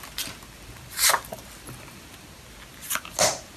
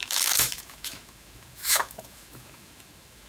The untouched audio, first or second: first